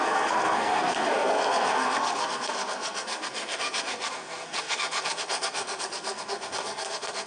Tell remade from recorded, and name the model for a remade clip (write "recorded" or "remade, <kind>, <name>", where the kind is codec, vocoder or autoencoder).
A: remade, codec, SNAC